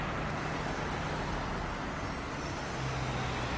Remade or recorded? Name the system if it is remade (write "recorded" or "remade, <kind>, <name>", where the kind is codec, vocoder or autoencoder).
recorded